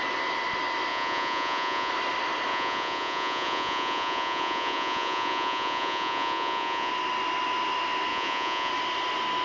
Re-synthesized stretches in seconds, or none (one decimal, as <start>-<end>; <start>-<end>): 0.9-1.9; 2.5-6.9; 8.1-8.7